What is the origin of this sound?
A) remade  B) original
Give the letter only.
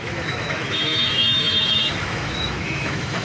A